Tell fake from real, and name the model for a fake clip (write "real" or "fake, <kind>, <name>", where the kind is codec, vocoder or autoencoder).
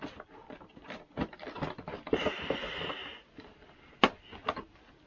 real